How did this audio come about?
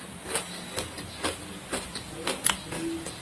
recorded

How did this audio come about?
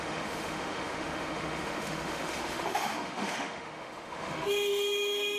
remade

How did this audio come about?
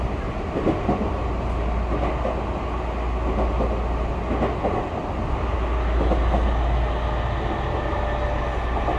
recorded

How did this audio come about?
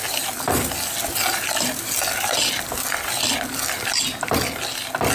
recorded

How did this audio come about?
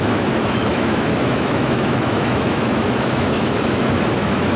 remade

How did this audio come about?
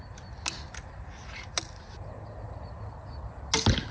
recorded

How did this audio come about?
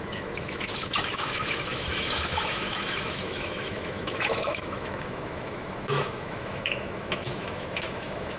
remade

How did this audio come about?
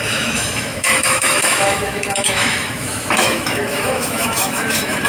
remade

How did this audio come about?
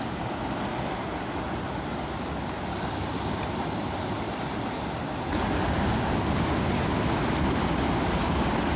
recorded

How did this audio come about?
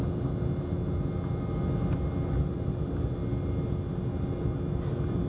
recorded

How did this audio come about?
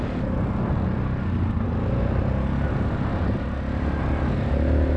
recorded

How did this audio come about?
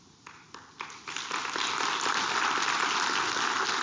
recorded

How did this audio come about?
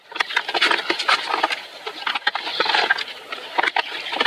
recorded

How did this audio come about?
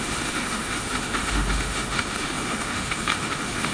remade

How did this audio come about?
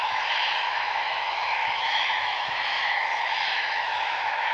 remade